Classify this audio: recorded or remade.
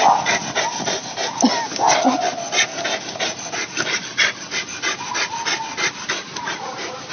recorded